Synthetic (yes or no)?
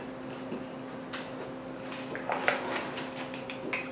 no